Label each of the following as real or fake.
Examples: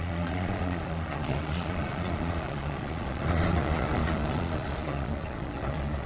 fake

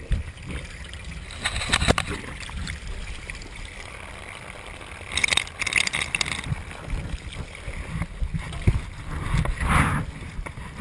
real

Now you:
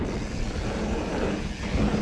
real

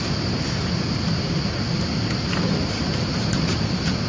real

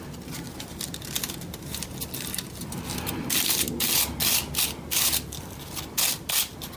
real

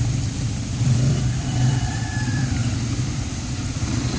fake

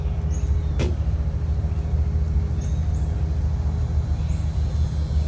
real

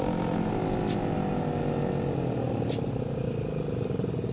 real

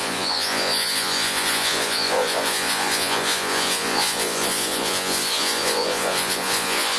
fake